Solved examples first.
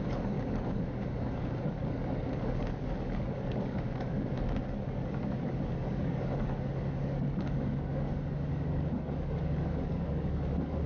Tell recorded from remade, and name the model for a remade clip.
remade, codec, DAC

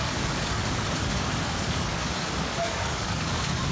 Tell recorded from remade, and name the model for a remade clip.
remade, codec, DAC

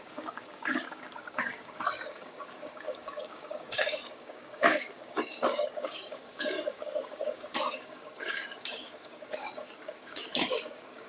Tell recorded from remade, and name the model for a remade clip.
remade, codec, DAC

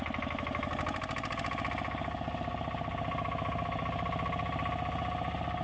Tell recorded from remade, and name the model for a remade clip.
recorded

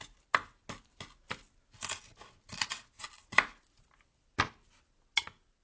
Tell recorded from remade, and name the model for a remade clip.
recorded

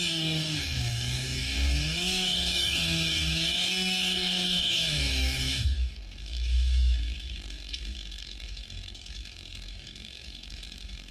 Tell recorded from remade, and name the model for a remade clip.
remade, codec, DAC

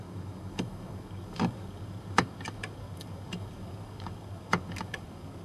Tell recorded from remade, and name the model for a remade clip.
remade, codec, DAC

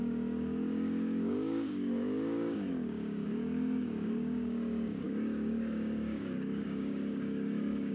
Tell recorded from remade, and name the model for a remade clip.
remade, codec, DAC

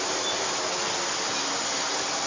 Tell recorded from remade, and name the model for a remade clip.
recorded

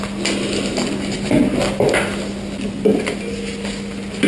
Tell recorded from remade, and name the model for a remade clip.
recorded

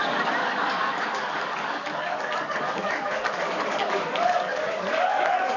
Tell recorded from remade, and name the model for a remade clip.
remade, codec, DAC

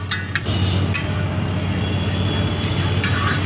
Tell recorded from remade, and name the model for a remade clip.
recorded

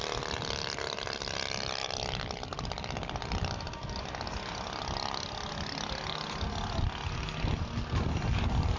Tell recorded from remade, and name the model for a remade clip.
recorded